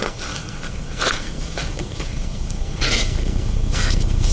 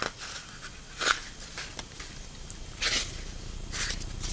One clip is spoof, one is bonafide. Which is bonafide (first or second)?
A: second